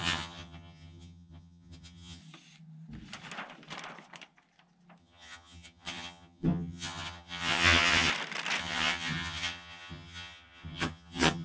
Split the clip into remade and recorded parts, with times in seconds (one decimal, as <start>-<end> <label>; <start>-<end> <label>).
0.0-2.2 remade; 2.2-5.0 recorded; 5.0-8.1 remade; 8.1-8.6 recorded; 8.6-11.4 remade